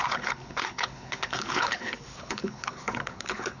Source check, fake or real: fake